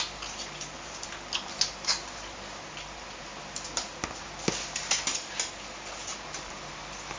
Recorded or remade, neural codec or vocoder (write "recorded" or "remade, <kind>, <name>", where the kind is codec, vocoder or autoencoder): recorded